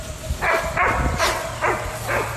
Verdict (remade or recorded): recorded